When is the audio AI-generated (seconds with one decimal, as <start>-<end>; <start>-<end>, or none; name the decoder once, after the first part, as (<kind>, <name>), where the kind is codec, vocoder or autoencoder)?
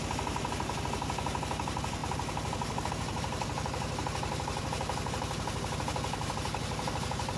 none